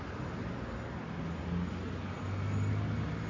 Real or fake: real